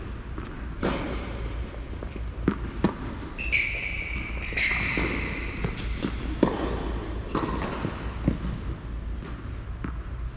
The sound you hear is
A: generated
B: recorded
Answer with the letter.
B